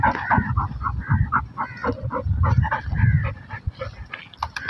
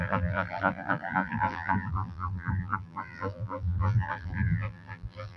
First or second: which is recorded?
first